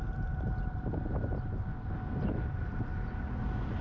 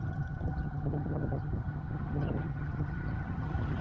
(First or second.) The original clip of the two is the first